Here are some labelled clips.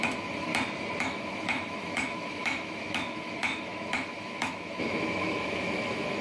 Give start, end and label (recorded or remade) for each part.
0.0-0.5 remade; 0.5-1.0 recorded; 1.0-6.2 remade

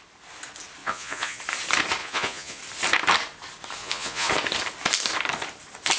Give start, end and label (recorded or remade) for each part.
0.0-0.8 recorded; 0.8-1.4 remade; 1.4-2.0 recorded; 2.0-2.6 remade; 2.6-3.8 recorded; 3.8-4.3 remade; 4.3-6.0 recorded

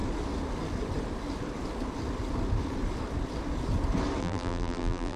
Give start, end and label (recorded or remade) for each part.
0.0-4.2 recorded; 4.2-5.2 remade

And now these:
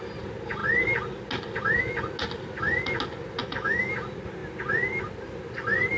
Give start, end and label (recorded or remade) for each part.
0.0-3.4 recorded; 3.4-3.9 remade; 3.9-6.0 recorded